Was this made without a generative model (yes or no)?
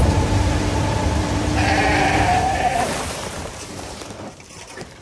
no